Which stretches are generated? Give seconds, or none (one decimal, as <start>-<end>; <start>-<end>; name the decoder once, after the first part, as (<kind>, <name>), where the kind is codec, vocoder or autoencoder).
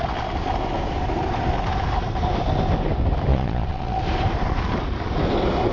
3.3-4.0 (vocoder, Vocos)